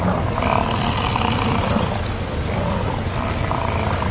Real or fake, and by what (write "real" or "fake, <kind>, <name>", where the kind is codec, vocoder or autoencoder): real